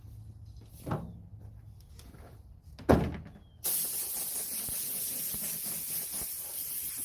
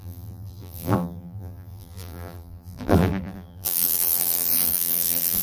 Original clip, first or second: first